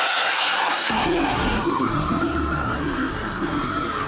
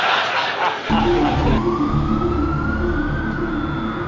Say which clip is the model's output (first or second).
first